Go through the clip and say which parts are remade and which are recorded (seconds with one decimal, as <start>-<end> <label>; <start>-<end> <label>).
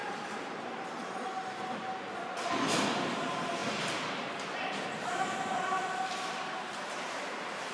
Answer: 0.0-7.7 recorded